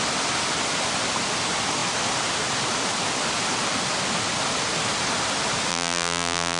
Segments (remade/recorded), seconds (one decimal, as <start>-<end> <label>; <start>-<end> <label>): 0.0-5.7 recorded; 5.7-6.6 remade